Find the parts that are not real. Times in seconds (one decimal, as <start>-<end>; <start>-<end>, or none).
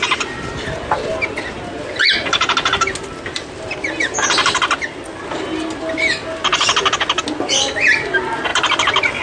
none